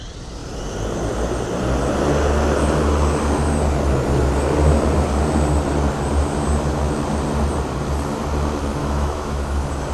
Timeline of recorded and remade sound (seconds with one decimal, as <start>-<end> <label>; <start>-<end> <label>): 0.0-8.8 recorded; 8.8-9.5 remade; 9.5-9.9 recorded